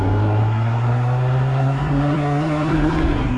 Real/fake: fake